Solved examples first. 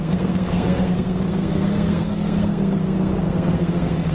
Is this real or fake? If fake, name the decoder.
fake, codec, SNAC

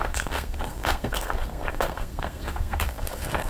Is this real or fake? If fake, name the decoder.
fake, codec, SNAC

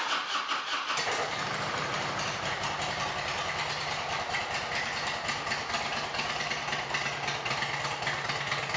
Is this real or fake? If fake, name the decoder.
real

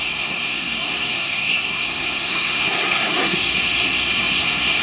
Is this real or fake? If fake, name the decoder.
fake, codec, SNAC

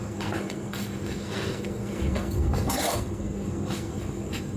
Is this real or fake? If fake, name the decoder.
fake, codec, SNAC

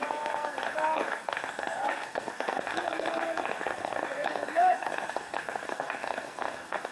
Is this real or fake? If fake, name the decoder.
fake, codec, SNAC